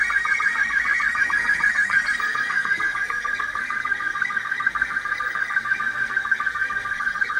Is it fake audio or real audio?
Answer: fake